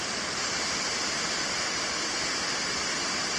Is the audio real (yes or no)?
yes